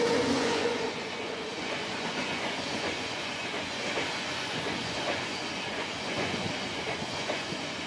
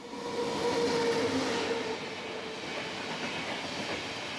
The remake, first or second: first